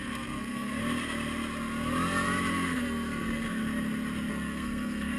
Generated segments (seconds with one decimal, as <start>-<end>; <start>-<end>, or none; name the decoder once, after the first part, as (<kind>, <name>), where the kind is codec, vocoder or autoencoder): 0.0-0.8 (codec, SNAC); 2.5-3.6; 4.3-5.2